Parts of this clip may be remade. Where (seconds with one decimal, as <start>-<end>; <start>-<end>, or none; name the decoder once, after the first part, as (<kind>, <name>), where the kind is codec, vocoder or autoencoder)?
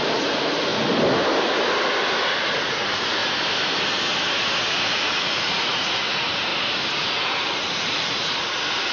0.0-0.7 (vocoder, Vocos); 2.2-3.2; 4.7-6.5; 7.1-8.9